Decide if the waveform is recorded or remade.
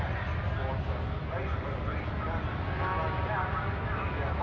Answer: recorded